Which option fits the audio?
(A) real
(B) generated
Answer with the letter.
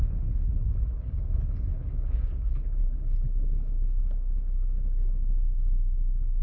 B